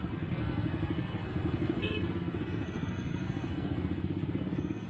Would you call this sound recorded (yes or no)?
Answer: no